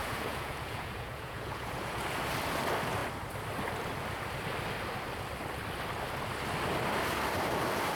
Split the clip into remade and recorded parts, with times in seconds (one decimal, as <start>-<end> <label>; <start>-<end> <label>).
0.0-2.0 remade; 2.0-7.9 recorded